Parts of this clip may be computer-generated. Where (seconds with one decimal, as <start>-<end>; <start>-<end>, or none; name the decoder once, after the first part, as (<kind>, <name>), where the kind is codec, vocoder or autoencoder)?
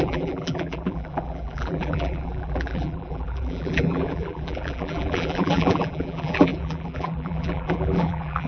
0.0-8.5 (vocoder, BigVGAN v2)